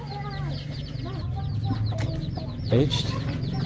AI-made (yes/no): no